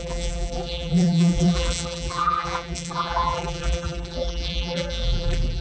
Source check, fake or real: fake